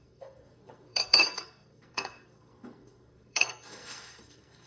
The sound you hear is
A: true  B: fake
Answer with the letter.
B